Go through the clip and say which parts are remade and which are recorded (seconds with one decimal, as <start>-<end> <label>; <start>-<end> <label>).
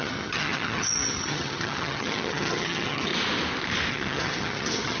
0.0-3.1 remade; 3.1-3.9 recorded; 3.9-5.0 remade